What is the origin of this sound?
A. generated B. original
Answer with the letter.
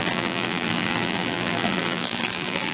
A